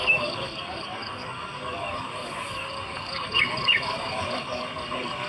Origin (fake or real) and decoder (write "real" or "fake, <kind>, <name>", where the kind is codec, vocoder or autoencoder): fake, codec, DAC